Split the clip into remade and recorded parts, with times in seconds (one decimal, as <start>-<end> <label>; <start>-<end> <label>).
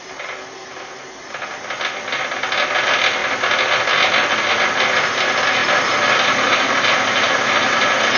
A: 0.0-5.6 recorded; 5.6-8.2 remade